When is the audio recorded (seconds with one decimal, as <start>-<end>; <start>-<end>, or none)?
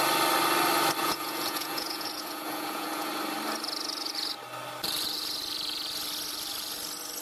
0.0-1.0; 3.1-7.2